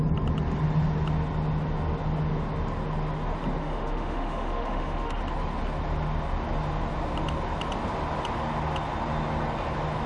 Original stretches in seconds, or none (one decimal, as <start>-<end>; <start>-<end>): 0.0-3.6; 5.2-10.1